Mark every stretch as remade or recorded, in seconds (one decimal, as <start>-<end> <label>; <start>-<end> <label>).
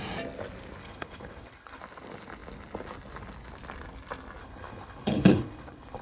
0.0-0.8 recorded; 0.8-1.8 remade; 1.8-4.4 recorded; 4.4-6.0 remade